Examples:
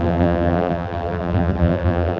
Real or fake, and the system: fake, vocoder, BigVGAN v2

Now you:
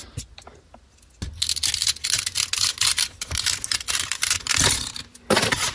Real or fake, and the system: real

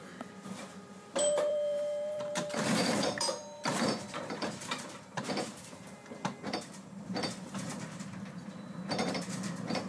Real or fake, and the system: fake, vocoder, BigVGAN v2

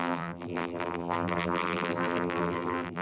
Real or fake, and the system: fake, vocoder, BigVGAN v2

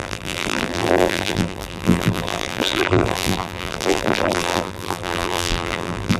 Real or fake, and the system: fake, vocoder, BigVGAN v2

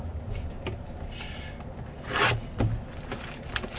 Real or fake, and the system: real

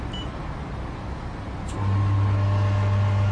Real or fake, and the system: real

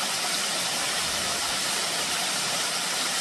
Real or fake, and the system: real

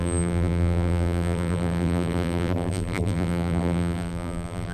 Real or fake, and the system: fake, vocoder, BigVGAN v2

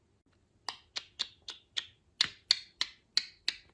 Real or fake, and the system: real